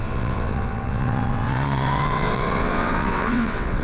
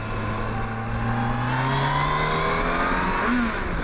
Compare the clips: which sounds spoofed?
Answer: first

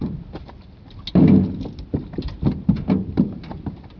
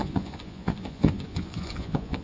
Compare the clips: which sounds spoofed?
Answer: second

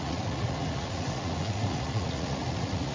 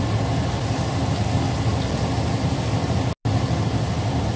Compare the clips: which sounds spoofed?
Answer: first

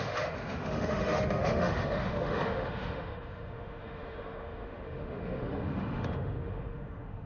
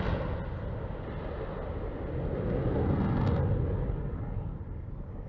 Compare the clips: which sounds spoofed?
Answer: first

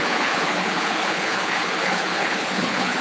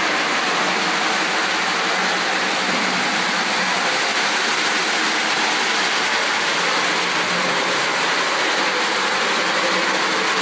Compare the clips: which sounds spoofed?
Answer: first